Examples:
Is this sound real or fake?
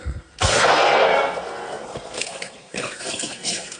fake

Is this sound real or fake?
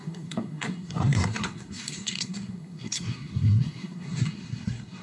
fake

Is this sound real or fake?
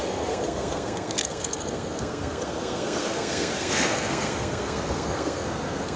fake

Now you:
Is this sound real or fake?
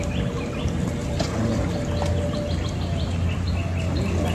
real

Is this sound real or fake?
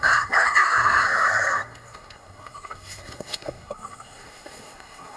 fake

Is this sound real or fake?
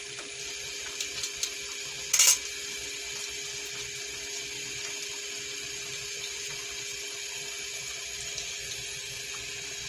real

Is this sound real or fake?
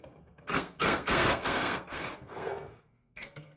fake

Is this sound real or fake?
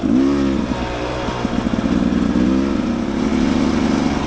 real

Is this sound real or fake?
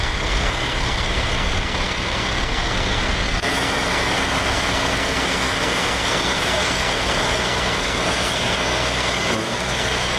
fake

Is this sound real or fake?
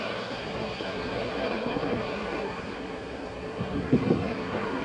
fake